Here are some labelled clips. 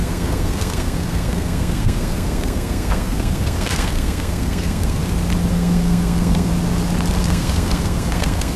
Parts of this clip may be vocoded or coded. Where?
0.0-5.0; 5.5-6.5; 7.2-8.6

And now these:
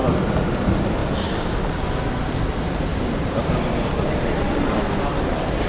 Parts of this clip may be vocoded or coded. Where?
none

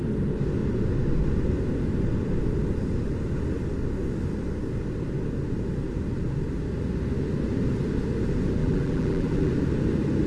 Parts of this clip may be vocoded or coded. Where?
8.6-9.5

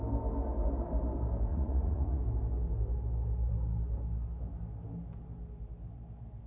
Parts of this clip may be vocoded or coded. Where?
1.5-2.2

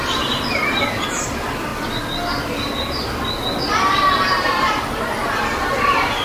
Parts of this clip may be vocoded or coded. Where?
0.0-1.7; 4.1-6.2

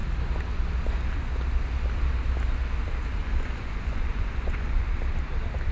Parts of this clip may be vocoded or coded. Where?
3.2-4.9

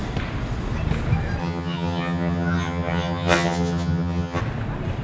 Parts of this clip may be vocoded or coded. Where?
1.4-4.4